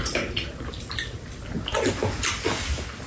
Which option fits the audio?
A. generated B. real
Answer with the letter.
B